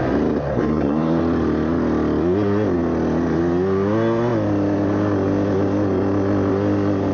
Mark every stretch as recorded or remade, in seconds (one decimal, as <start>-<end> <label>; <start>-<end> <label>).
0.0-0.5 recorded; 0.5-1.2 remade; 1.2-7.1 recorded